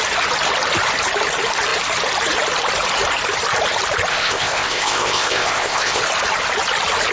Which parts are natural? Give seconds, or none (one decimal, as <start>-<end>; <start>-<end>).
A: 0.0-4.1; 6.0-7.1